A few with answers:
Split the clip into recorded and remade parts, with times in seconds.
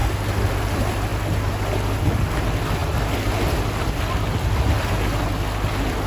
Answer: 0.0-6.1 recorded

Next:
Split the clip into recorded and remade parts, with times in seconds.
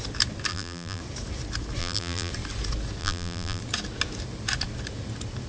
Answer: 0.0-0.5 recorded; 0.5-1.0 remade; 1.0-1.8 recorded; 1.8-2.3 remade; 2.3-3.0 recorded; 3.0-3.6 remade; 3.6-5.5 recorded